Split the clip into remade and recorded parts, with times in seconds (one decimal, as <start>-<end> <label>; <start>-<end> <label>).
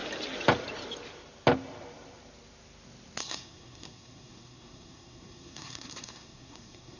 0.0-3.2 recorded; 3.2-7.0 remade